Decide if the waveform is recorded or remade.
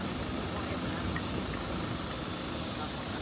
recorded